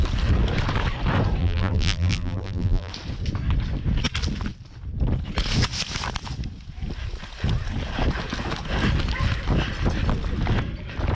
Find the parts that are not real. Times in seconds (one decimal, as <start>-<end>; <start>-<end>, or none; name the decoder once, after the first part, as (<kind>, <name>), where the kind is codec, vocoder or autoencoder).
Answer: 1.4-2.9 (vocoder, BigVGAN v2)